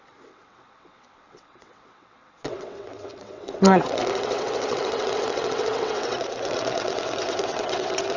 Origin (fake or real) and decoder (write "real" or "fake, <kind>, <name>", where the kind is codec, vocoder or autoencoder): fake, vocoder, WaveNeXt